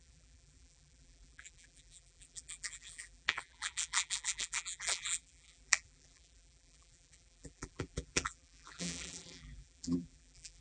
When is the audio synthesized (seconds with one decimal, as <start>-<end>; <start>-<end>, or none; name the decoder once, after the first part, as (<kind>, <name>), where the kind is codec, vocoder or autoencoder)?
0.0-10.6 (vocoder, BigVGAN v2)